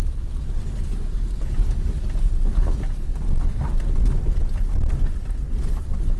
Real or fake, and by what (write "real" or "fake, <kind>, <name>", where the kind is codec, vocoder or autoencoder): real